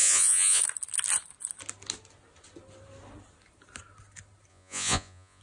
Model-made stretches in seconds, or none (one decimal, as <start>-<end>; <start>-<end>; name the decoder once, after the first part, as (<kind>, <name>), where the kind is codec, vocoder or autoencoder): 0.0-0.6 (vocoder, Vocos); 4.5-5.4